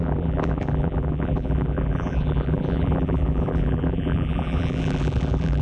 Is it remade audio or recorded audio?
remade